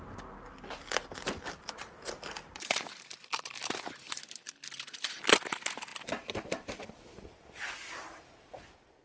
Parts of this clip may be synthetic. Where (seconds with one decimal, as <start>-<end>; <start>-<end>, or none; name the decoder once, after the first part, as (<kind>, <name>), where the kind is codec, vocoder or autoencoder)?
none